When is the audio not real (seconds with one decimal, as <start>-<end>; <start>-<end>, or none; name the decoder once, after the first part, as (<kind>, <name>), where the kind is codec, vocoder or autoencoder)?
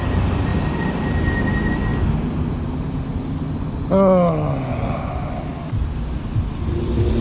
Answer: none